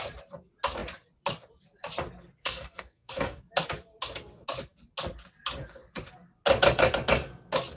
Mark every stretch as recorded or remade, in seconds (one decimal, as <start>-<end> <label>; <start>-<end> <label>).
0.0-2.4 recorded; 2.4-3.4 remade; 3.4-7.8 recorded